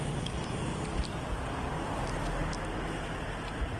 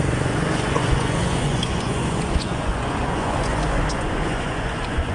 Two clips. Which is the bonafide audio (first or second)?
first